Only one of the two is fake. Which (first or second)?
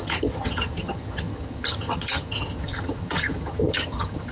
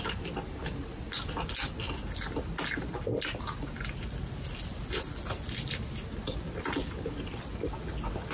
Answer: first